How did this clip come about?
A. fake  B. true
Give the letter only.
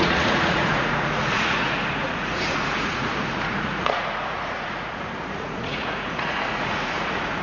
A